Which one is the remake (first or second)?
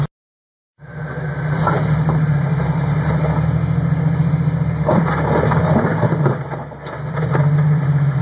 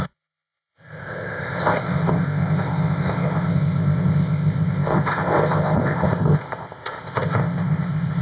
second